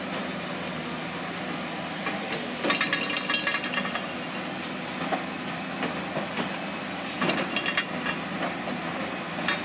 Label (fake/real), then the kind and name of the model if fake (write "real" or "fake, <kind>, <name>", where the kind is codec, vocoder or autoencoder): real